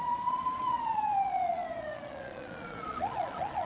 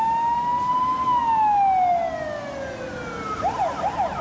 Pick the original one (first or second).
second